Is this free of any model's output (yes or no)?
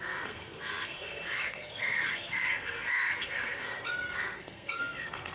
no